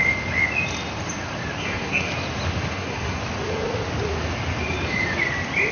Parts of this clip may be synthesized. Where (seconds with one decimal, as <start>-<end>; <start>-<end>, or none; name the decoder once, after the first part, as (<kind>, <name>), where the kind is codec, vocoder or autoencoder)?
1.6-2.1 (codec, SNAC); 2.7-3.2